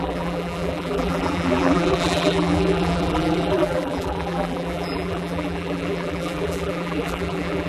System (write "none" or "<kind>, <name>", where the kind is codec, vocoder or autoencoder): vocoder, BigVGAN v2